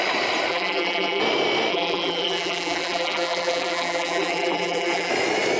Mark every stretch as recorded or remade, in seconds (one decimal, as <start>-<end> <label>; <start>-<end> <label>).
0.0-0.5 recorded; 0.5-1.2 remade; 1.2-1.7 recorded; 1.7-5.1 remade; 5.1-5.6 recorded